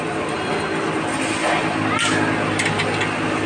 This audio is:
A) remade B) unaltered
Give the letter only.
B